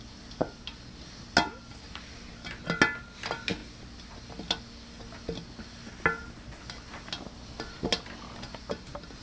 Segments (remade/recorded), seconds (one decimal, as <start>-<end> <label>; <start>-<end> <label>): 0.0-9.2 recorded